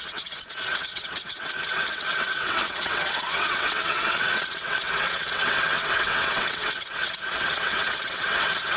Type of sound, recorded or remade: remade